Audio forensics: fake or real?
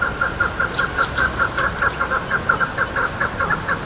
real